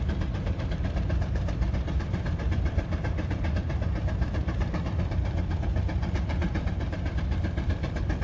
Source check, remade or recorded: remade